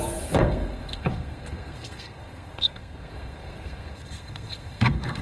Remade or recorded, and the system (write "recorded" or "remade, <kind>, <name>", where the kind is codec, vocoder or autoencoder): remade, codec, SNAC